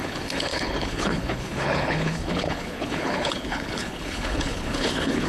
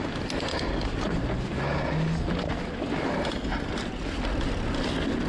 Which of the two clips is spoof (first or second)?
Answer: first